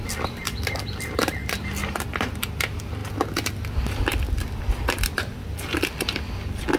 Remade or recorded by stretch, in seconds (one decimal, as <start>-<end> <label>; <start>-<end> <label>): 0.0-6.8 recorded

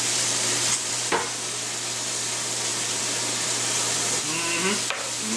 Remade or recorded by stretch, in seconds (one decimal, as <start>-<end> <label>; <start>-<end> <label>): 0.0-2.7 recorded; 2.7-4.2 remade; 4.2-5.4 recorded

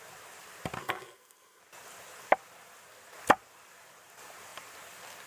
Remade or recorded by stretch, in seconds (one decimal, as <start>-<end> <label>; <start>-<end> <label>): 0.0-0.8 recorded; 0.8-1.6 remade; 1.6-5.3 recorded

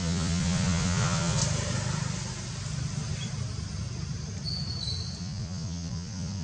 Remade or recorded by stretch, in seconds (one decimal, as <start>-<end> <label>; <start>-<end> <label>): 0.0-1.4 remade; 1.4-5.2 recorded; 5.2-6.4 remade